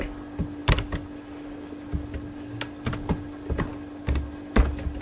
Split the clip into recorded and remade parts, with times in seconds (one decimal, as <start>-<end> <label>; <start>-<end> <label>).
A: 0.0-5.0 recorded